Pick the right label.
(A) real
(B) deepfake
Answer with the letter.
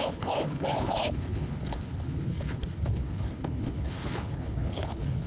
B